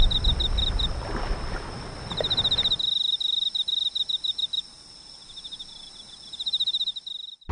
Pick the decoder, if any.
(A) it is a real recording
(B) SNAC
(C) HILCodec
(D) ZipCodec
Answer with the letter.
A